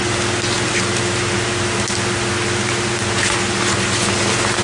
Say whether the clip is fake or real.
real